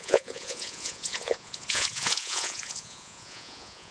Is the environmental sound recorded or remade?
remade